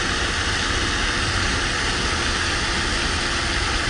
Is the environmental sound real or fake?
real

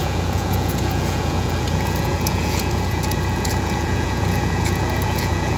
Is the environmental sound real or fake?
fake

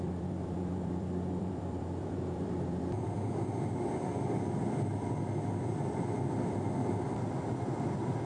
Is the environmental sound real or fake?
fake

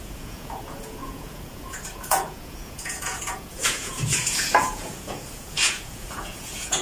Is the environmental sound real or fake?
fake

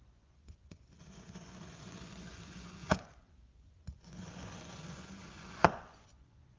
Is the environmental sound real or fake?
fake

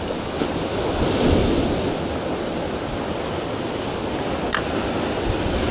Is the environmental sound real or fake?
real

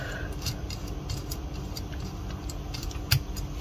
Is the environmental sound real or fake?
real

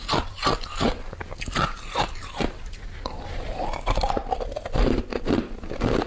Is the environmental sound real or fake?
real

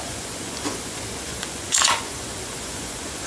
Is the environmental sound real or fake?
fake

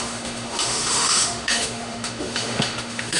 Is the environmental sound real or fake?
fake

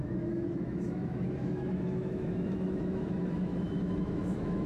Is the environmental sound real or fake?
fake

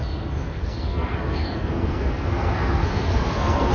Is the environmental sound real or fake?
fake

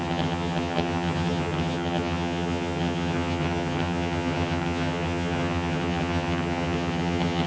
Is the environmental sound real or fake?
fake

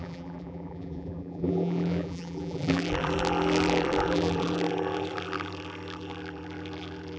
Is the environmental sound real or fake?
fake